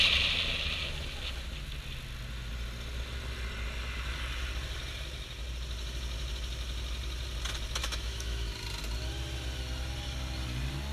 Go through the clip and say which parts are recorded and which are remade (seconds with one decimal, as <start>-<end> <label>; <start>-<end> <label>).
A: 0.0-7.8 recorded; 7.8-8.5 remade; 8.5-10.9 recorded